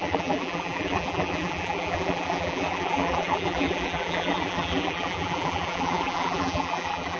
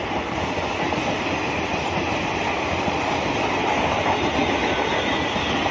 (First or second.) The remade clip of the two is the first